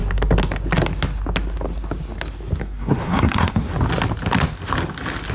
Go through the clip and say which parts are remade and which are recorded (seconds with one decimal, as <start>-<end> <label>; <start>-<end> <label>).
0.0-2.6 recorded; 2.6-3.7 remade; 3.7-5.3 recorded